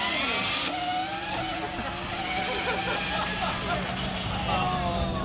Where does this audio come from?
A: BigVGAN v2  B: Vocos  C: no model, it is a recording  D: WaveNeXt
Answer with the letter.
C